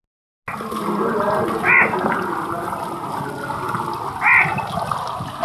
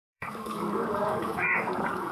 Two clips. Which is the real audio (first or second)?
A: first